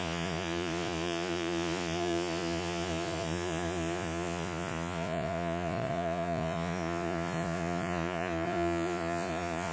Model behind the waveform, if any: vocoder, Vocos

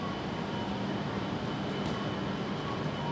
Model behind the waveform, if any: none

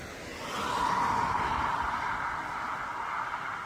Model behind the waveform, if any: none